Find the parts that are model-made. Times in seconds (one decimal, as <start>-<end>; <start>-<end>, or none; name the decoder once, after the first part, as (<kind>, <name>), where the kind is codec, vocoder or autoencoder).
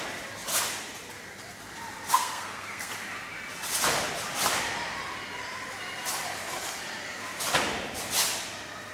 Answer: 2.1-2.9 (codec, SNAC)